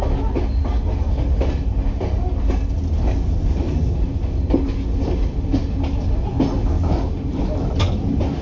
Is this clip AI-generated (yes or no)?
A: no